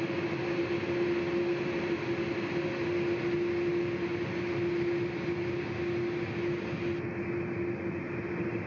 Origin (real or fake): real